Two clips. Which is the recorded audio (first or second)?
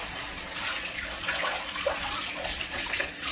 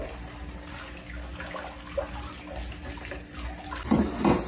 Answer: second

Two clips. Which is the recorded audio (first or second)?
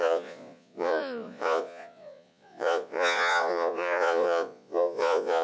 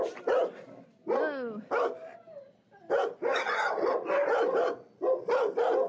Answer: second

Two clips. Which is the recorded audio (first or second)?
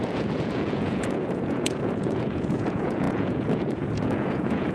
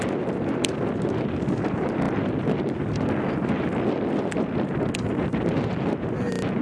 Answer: second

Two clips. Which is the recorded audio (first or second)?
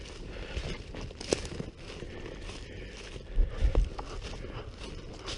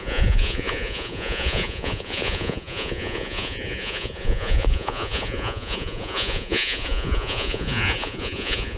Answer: first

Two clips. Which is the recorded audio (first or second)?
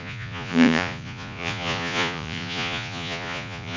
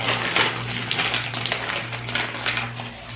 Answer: second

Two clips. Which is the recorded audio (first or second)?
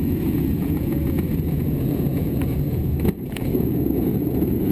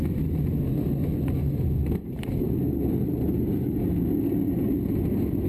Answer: second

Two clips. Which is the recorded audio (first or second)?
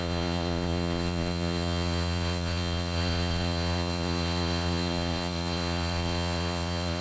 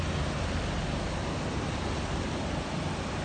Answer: second